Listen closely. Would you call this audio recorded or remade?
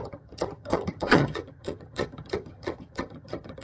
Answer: remade